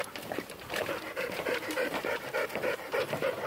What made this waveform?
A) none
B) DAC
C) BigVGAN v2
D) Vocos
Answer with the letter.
A